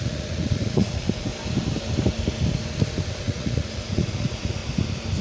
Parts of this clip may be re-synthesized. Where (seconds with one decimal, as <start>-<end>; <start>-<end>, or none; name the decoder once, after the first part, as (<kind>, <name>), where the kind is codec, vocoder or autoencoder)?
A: 0.0-1.3 (vocoder, Vocos); 3.2-4.6